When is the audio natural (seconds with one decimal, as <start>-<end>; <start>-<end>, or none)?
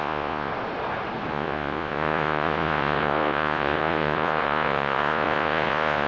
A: 0.5-1.3